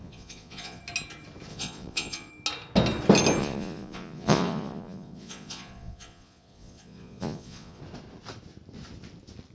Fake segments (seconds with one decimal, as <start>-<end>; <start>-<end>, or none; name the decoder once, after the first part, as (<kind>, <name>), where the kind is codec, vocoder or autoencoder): 0.0-0.8 (vocoder, Vocos); 1.5-2.3; 3.4-7.8